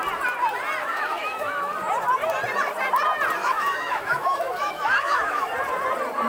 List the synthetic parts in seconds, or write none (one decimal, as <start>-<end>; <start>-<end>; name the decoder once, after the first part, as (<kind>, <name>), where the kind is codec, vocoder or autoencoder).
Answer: 0.8-1.7 (autoencoder, DAC-VAE); 3.4-5.5